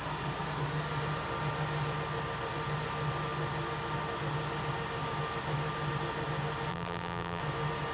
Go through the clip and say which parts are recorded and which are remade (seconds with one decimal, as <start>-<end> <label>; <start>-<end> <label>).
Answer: 0.0-6.7 recorded; 6.7-7.4 remade; 7.4-7.9 recorded